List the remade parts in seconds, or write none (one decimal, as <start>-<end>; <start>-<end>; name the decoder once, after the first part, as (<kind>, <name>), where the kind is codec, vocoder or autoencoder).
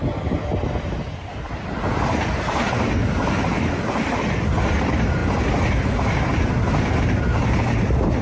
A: 3.0-3.8 (vocoder, BigVGAN v2)